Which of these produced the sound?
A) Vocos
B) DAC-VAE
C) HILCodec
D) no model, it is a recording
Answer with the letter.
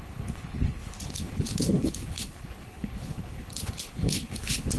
C